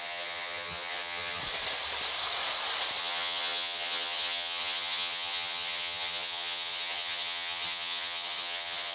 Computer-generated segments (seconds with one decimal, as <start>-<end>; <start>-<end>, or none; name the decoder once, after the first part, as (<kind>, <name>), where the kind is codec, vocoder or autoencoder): 0.0-1.4 (vocoder, HiFi-GAN); 3.0-8.9